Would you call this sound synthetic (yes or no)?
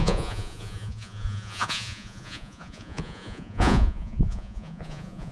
yes